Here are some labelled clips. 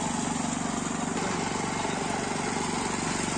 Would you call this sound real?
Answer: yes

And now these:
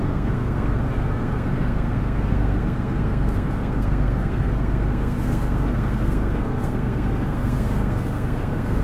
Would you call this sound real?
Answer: no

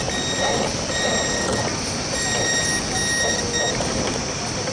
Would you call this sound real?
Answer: yes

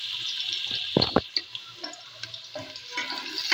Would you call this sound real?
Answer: yes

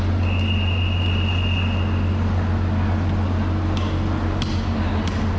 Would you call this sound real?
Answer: yes